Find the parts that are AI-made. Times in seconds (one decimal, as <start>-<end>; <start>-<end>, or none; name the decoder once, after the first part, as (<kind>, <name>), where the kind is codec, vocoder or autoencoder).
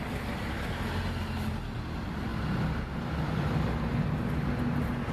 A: none